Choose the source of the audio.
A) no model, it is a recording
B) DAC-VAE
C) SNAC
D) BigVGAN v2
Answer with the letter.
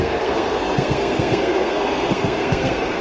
C